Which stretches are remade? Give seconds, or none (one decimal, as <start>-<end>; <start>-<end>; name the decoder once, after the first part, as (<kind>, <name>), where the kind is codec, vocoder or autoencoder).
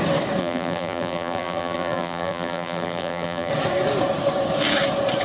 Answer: 0.4-3.5 (vocoder, BigVGAN v2)